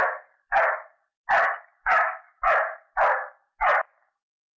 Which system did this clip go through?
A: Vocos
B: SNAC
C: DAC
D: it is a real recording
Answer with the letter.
D